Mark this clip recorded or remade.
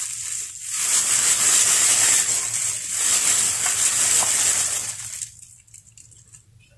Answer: recorded